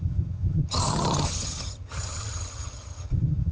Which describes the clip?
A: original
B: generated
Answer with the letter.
B